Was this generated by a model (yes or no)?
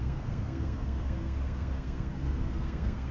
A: yes